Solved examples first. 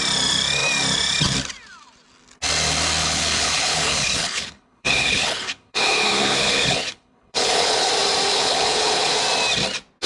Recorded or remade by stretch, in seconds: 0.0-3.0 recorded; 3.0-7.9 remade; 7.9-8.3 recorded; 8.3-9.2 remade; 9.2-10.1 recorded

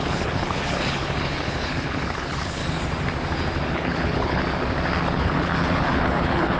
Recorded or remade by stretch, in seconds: 0.0-2.6 remade; 2.6-3.7 recorded; 3.7-4.4 remade; 4.4-5.1 recorded; 5.1-6.6 remade

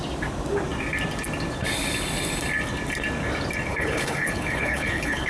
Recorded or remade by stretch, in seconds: 0.0-3.7 recorded; 3.7-5.3 remade

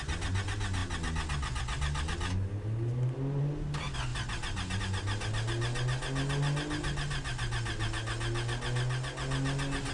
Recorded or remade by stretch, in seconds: 0.0-9.9 recorded

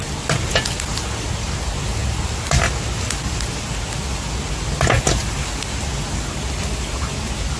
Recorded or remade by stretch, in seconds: 0.0-7.6 recorded